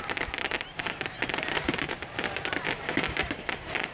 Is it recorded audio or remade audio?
remade